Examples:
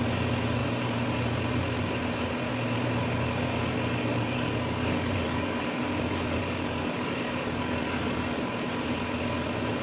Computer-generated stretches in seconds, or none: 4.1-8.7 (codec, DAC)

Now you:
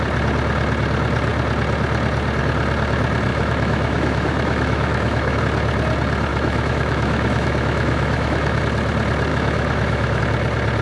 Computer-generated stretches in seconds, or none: 3.3-5.4 (autoencoder, DAC-VAE); 6.3-8.6; 9.3-10.2